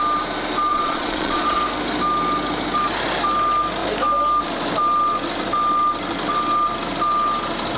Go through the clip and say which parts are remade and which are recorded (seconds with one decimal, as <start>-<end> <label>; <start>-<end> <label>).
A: 0.0-0.7 recorded; 0.7-1.6 remade; 1.6-7.8 recorded